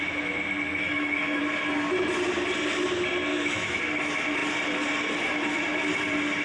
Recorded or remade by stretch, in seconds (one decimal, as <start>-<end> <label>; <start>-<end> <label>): 0.0-0.7 recorded; 0.7-1.4 remade; 1.4-3.3 recorded; 3.3-3.8 remade; 3.8-6.4 recorded